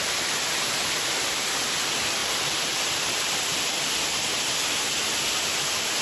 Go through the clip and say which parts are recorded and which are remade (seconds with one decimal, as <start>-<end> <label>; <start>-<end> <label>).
0.0-2.2 recorded; 2.2-4.3 remade; 4.3-6.0 recorded